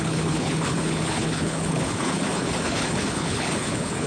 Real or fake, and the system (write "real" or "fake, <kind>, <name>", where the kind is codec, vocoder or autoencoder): fake, codec, HILCodec